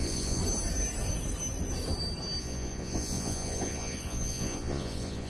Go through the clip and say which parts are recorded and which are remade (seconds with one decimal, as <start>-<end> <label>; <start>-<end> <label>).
0.0-0.4 remade; 0.4-2.4 recorded; 2.4-5.3 remade